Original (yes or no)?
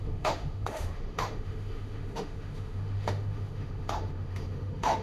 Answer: no